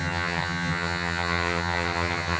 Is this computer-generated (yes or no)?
yes